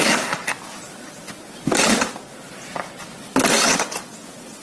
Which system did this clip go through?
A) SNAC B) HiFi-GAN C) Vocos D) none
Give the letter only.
D